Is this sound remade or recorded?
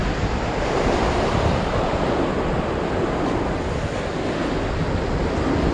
recorded